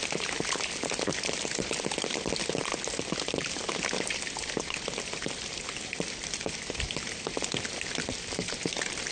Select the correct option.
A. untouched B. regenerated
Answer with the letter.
A